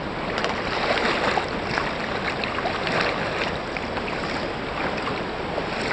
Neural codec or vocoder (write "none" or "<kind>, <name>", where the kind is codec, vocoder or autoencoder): none